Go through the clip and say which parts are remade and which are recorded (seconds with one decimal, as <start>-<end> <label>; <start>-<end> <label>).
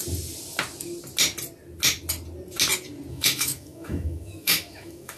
0.0-3.1 recorded; 3.1-5.2 remade